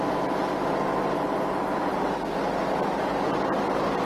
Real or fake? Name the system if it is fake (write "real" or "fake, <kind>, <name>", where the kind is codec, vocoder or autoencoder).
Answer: real